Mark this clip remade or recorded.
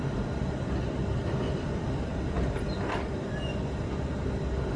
remade